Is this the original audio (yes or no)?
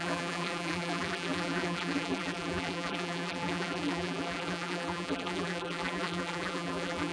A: no